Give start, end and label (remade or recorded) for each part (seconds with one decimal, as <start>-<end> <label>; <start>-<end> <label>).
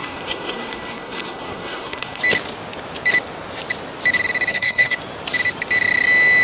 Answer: 0.0-2.2 remade; 2.2-4.5 recorded; 4.5-5.0 remade; 5.0-6.4 recorded